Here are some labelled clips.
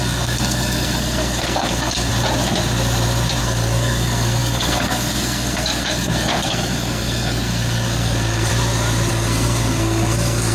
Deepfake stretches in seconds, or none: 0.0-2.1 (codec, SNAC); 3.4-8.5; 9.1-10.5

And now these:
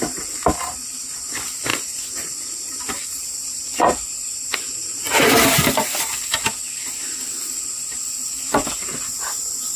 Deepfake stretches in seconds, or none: 1.7-4.0 (vocoder, BigVGAN v2)